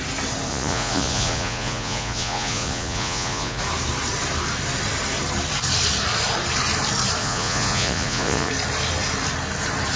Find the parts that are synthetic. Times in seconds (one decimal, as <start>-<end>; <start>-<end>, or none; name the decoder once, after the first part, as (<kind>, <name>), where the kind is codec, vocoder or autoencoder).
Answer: 0.5-3.6 (vocoder, Vocos); 7.2-8.5